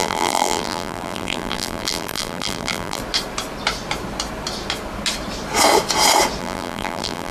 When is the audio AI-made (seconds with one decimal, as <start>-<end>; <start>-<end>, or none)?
0.0-3.0; 6.4-7.3